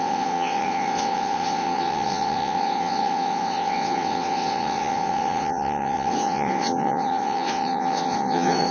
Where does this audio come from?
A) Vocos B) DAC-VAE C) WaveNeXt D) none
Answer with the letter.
C